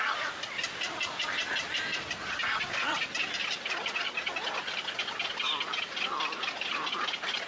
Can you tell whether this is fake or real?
real